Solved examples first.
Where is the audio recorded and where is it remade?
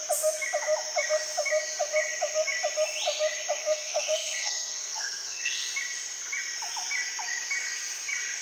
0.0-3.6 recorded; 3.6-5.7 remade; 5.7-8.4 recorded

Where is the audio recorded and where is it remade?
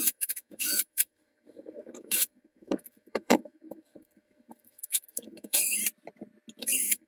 0.0-5.8 remade; 5.8-6.6 recorded; 6.6-7.1 remade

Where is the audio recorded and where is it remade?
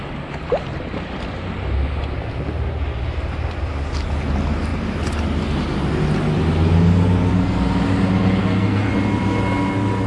0.0-8.4 recorded; 8.4-8.9 remade; 8.9-10.1 recorded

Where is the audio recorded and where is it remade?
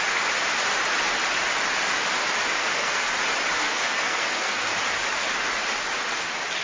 0.0-2.6 recorded; 2.6-3.1 remade; 3.1-3.6 recorded; 3.6-4.7 remade; 4.7-6.6 recorded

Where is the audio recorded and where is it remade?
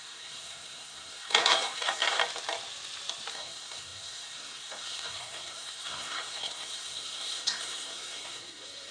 0.0-2.2 remade; 2.2-3.3 recorded; 3.3-8.9 remade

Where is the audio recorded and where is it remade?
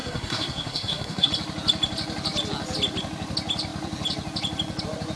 0.0-1.3 remade; 1.3-5.2 recorded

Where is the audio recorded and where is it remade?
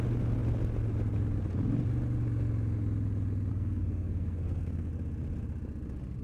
0.0-3.5 recorded; 3.5-4.9 remade; 4.9-6.2 recorded